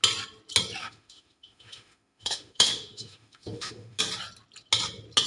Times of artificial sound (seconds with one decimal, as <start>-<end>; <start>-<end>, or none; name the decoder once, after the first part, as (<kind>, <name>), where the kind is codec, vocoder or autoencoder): 0.8-4.0 (autoencoder, DAC-VAE)